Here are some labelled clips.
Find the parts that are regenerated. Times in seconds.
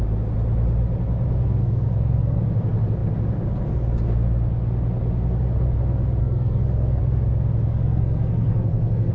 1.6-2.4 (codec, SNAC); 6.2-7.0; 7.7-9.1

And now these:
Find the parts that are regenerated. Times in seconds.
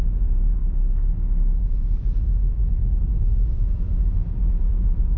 0.0-0.6 (vocoder, Vocos); 1.6-3.7; 4.3-5.2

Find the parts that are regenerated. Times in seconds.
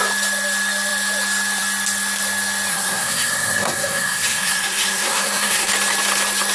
2.7-5.7 (codec, SNAC)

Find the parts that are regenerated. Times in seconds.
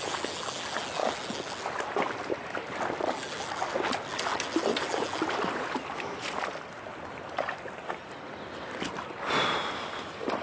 none